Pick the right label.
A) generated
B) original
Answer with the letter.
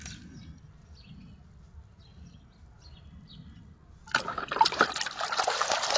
B